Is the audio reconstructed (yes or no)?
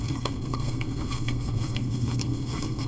yes